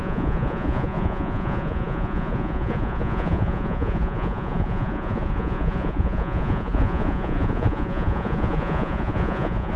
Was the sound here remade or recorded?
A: remade